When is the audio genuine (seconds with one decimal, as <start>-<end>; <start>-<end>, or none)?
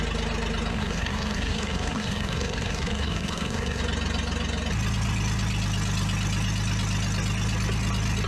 0.0-0.7; 3.8-8.3